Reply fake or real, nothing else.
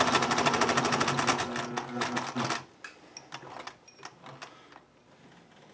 real